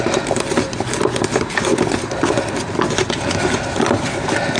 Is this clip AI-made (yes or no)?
no